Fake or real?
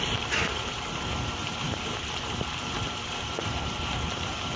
fake